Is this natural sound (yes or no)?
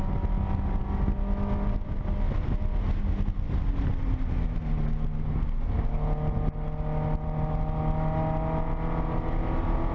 yes